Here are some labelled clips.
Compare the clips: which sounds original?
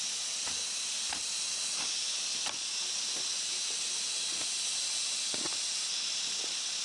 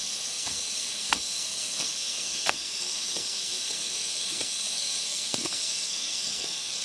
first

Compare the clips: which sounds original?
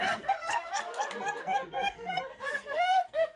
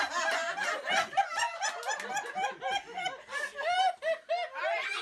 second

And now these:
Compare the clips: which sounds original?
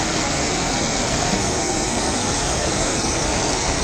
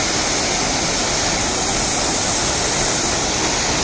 second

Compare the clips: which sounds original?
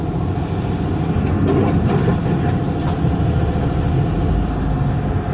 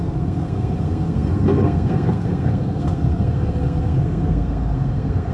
first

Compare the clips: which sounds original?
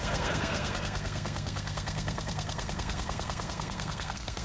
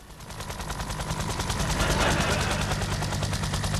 second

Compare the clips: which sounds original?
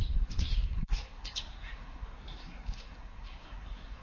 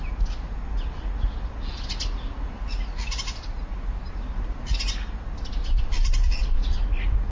second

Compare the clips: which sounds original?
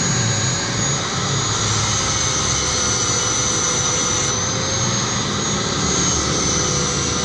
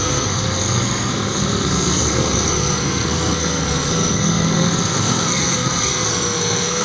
first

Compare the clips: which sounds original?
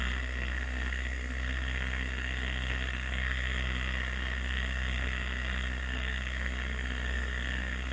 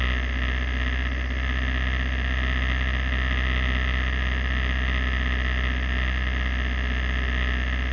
second